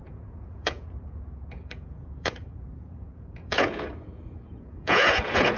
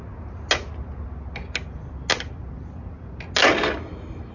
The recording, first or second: second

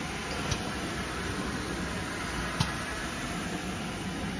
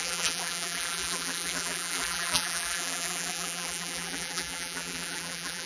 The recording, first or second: first